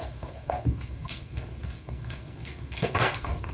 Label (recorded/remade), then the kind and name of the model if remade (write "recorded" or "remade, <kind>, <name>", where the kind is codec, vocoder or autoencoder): remade, codec, SNAC